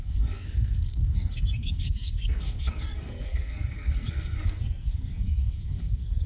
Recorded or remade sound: remade